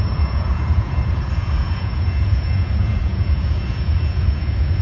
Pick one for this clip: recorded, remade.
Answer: remade